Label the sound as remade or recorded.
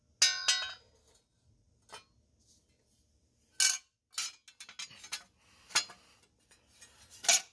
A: recorded